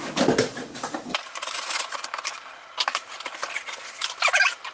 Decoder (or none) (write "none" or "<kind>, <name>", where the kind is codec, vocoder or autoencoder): none